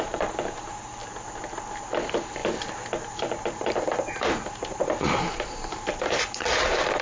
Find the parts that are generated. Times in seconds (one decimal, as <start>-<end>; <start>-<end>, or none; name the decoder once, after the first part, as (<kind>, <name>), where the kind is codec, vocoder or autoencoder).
0.0-1.0 (vocoder, BigVGAN v2); 1.8-7.0